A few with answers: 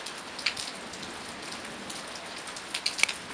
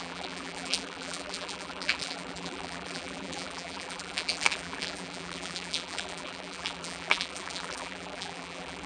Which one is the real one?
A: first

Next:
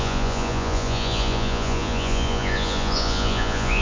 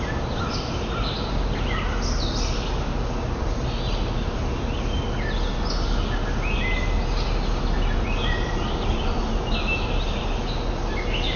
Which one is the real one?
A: second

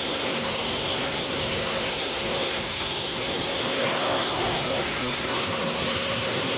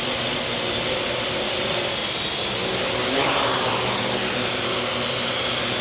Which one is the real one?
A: second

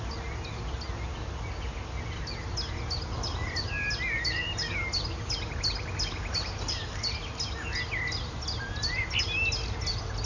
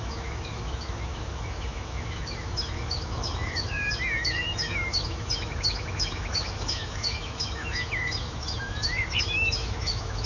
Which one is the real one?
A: first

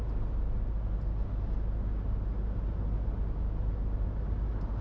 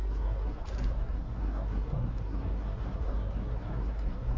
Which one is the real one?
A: first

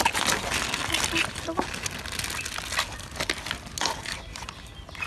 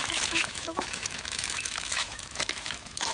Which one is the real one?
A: first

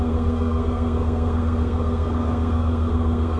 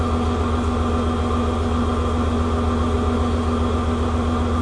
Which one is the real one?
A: second